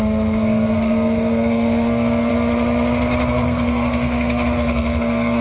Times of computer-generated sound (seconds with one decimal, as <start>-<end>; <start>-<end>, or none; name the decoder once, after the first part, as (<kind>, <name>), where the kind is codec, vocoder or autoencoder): 0.0-2.3 (codec, SNAC); 3.3-5.4